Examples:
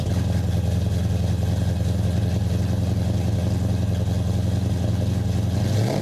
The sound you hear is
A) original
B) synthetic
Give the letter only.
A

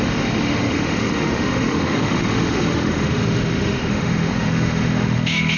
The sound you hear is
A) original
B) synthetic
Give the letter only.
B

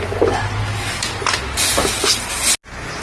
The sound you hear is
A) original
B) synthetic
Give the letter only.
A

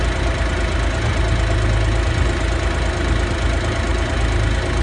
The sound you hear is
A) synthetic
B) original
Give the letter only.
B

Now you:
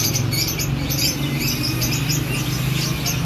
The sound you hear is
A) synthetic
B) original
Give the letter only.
B